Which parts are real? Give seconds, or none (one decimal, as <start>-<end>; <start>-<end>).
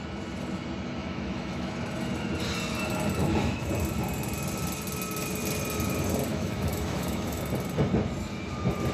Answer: 0.0-1.0; 1.7-3.2; 3.7-6.3; 7.4-8.9